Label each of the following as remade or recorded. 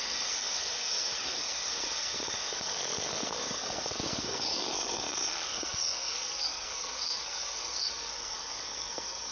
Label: remade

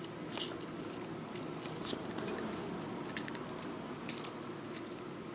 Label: recorded